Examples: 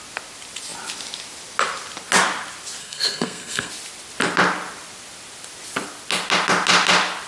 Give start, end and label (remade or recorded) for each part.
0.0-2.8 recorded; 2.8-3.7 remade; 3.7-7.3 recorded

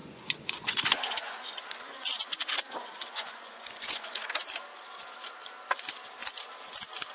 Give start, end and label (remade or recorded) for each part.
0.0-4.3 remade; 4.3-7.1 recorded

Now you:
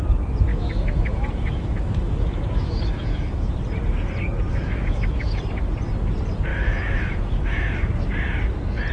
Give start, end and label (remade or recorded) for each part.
0.0-0.5 recorded; 0.5-3.5 remade; 3.5-4.5 recorded; 4.5-5.4 remade; 5.4-6.5 recorded; 6.5-7.9 remade; 7.9-8.9 recorded